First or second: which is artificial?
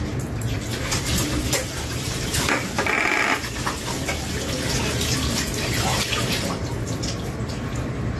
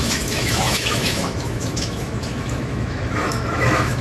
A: second